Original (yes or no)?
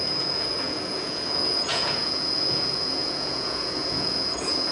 no